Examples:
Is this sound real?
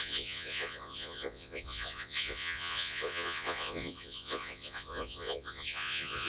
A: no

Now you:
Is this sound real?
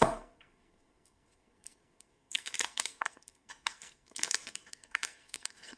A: no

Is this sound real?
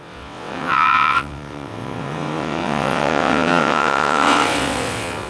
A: no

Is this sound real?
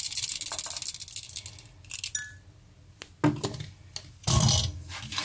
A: yes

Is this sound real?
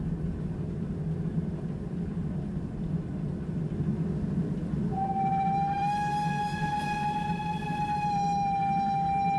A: yes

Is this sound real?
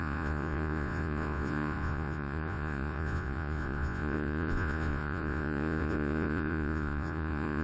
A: no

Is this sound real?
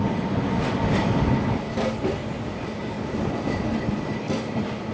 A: yes